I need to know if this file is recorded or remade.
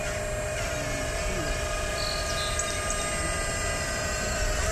recorded